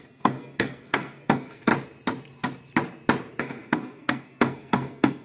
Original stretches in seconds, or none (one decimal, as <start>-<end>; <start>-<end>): 1.7-3.4